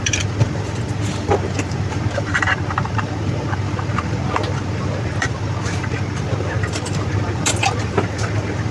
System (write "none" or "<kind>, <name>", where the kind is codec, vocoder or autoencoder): vocoder, BigVGAN v2